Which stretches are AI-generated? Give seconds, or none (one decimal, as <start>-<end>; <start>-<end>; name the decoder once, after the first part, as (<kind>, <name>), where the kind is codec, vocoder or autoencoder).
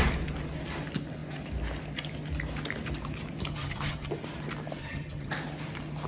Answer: 3.5-4.1 (vocoder, HiFi-GAN); 4.8-5.3